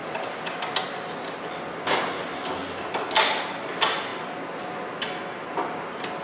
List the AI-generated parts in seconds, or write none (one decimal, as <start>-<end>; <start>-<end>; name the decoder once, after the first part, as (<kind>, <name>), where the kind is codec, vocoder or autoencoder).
none